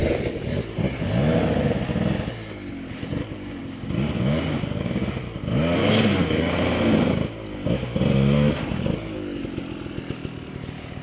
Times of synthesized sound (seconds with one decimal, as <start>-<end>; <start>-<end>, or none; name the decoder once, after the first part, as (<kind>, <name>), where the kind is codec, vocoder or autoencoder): 3.6-5.2 (codec, DAC); 5.8-6.5